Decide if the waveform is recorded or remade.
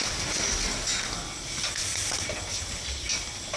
recorded